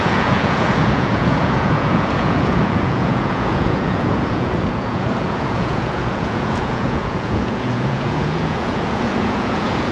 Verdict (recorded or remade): remade